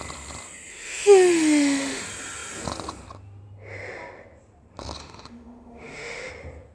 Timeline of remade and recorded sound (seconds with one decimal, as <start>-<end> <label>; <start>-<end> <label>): 0.0-0.7 recorded; 0.7-2.0 remade; 2.0-5.0 recorded; 5.0-6.3 remade; 6.3-6.7 recorded